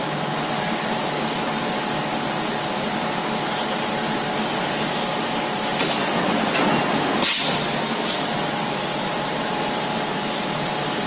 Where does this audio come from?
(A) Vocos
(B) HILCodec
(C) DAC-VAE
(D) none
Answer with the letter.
D